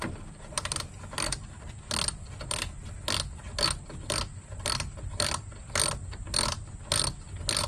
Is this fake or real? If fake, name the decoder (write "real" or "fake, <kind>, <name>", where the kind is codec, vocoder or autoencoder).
real